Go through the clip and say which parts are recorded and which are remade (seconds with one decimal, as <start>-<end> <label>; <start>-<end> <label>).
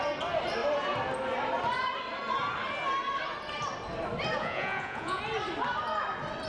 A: 0.0-4.4 recorded; 4.4-5.2 remade; 5.2-6.5 recorded